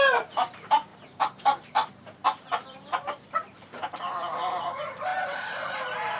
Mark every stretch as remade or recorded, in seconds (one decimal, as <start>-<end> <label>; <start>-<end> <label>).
0.0-6.2 remade